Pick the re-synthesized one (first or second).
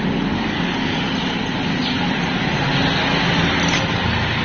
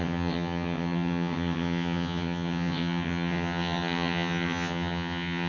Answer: second